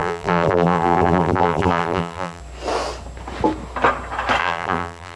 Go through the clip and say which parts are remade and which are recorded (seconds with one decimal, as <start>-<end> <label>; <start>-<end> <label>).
0.0-2.4 remade; 2.4-4.4 recorded; 4.4-5.2 remade